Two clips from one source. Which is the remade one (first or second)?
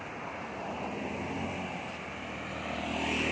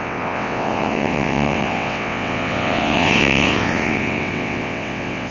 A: second